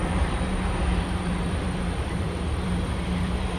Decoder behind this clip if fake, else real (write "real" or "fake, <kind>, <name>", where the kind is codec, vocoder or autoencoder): fake, vocoder, BigVGAN v2